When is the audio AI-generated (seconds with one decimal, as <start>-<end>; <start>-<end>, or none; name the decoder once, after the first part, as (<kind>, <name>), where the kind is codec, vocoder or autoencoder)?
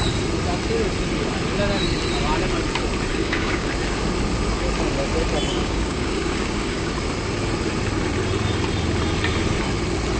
3.1-3.7 (codec, DAC); 5.5-6.9